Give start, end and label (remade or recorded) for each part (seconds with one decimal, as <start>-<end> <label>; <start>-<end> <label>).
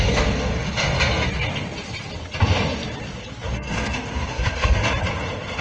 0.0-0.5 remade; 0.5-3.5 recorded; 3.5-4.8 remade; 4.8-5.6 recorded